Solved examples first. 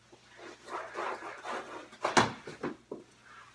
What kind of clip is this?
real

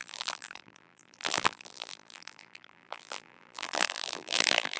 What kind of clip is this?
fake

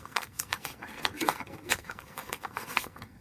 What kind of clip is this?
fake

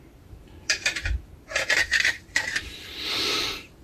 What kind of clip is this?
fake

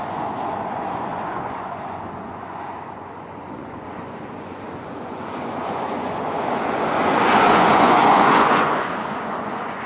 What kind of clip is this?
fake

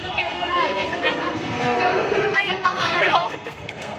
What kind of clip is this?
fake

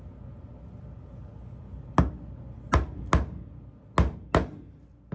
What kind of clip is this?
real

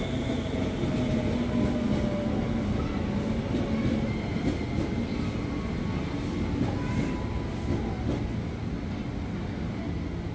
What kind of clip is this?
real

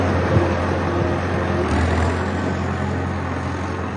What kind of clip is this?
real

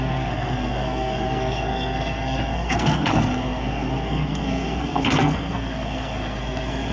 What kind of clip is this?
fake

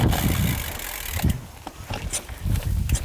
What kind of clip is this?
real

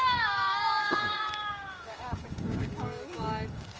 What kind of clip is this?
fake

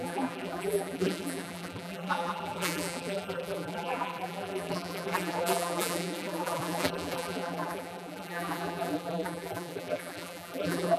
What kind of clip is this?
fake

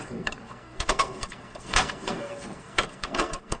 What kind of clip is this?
fake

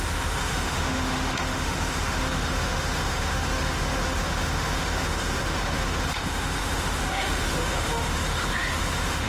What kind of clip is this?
fake